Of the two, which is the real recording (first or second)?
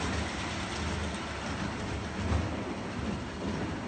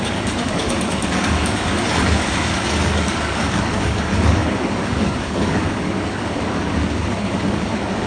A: first